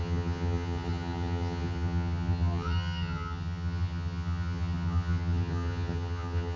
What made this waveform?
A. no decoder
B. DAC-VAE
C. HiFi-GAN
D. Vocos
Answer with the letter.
C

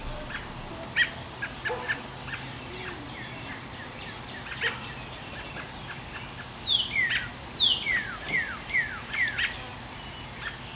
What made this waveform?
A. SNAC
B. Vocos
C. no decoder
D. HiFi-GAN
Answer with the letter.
C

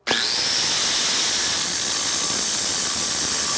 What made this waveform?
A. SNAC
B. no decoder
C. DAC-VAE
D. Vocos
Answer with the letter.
B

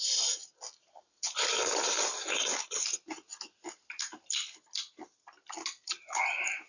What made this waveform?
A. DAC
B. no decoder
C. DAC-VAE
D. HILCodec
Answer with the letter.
B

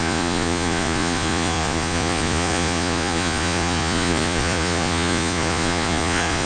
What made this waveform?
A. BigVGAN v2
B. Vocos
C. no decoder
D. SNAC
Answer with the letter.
B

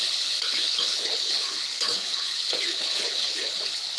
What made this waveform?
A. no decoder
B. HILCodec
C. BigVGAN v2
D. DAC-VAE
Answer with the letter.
B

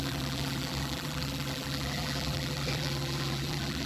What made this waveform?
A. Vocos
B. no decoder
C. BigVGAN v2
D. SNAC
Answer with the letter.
C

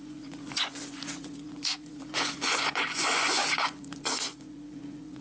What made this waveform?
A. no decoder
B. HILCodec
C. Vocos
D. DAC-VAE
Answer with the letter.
C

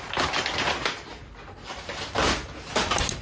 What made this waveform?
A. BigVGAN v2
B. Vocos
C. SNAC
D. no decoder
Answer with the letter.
D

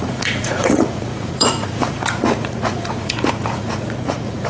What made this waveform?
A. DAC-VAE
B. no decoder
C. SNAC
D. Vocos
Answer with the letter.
D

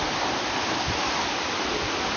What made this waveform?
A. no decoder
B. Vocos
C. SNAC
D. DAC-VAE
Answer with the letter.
A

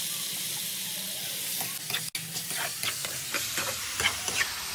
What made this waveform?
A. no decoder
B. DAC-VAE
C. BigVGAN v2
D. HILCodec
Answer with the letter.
A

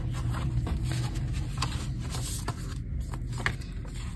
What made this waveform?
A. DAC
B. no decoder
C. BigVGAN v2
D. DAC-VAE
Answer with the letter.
B